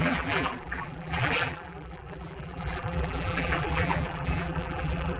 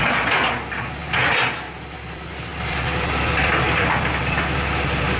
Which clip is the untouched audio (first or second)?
second